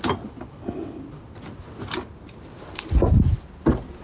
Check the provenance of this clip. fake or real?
real